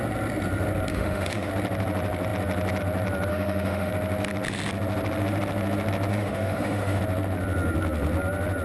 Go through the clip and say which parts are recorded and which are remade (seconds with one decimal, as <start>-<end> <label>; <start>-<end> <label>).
0.0-0.9 recorded; 0.9-1.5 remade; 1.5-3.3 recorded; 3.3-3.9 remade; 3.9-6.1 recorded; 6.1-7.0 remade; 7.0-8.6 recorded